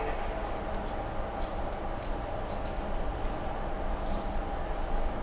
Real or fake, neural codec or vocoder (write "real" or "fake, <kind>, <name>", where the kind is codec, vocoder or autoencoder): real